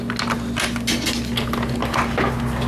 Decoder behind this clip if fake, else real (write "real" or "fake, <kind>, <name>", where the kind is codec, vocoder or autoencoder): real